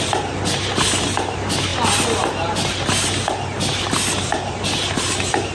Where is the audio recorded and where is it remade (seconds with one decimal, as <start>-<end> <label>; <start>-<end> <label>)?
0.0-5.5 recorded

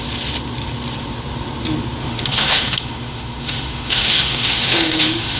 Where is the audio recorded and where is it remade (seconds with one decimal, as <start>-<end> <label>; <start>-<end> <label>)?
0.0-2.0 recorded; 2.0-5.4 remade

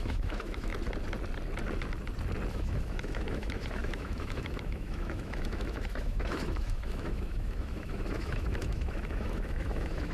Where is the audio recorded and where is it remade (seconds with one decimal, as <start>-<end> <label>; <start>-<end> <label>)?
0.0-0.7 remade; 0.7-2.5 recorded; 2.5-10.1 remade

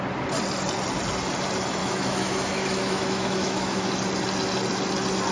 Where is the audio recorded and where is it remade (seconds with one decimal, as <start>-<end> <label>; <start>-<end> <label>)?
0.0-1.8 recorded; 1.8-3.9 remade; 3.9-5.3 recorded